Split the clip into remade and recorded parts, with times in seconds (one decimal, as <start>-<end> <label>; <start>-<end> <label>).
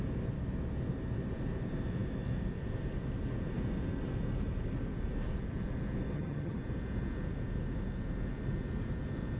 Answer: 0.0-6.1 recorded; 6.1-6.6 remade; 6.6-9.4 recorded